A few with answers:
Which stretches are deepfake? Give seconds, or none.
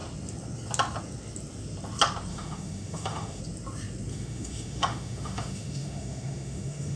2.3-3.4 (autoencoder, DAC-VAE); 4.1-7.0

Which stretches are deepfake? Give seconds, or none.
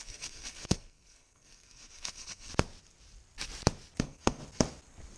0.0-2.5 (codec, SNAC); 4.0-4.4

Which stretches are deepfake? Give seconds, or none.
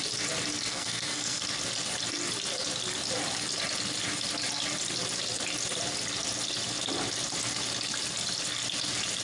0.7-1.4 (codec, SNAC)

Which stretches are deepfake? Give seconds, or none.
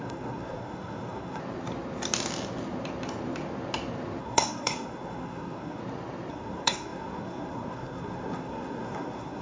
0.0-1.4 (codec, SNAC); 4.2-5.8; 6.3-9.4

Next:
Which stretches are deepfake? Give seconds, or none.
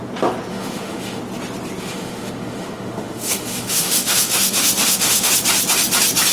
0.5-1.2 (autoencoder, DAC-VAE); 1.8-5.3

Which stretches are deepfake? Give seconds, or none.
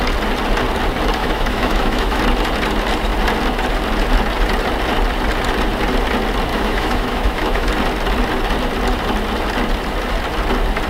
1.2-2.2 (autoencoder, DAC-VAE); 6.5-7.7